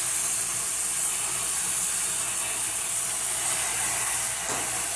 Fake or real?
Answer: real